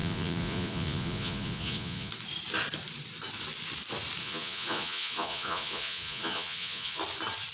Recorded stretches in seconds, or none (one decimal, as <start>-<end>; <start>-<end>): 2.1-4.2; 7.0-7.5

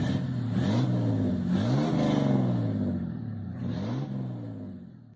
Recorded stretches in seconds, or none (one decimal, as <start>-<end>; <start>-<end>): 0.0-5.2

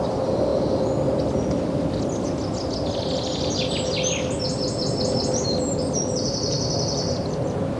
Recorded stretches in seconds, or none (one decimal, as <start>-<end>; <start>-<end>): 0.0-7.8